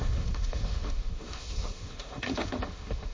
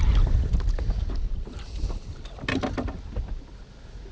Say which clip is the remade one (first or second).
first